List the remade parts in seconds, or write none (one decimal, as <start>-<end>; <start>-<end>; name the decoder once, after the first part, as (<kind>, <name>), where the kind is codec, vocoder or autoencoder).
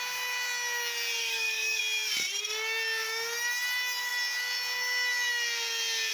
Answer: 1.2-1.8 (codec, DAC)